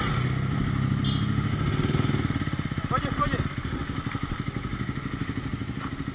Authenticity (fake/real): real